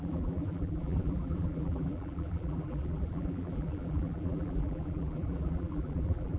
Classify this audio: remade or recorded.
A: remade